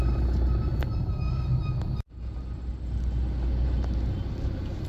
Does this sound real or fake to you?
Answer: real